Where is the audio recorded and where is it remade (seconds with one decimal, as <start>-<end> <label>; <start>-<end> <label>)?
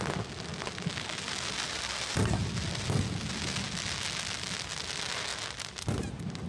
0.0-6.5 recorded